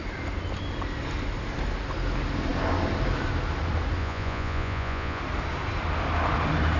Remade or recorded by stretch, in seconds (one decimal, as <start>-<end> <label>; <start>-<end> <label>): 0.0-4.0 recorded; 4.0-5.2 remade; 5.2-6.8 recorded